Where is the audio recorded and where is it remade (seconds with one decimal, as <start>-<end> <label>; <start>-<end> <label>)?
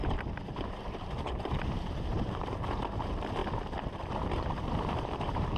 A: 0.0-3.4 remade; 3.4-4.5 recorded; 4.5-5.6 remade